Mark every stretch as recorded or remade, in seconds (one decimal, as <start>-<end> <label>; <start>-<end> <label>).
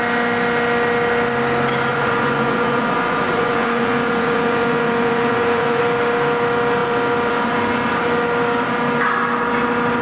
0.0-1.9 recorded; 1.9-5.8 remade; 5.8-10.0 recorded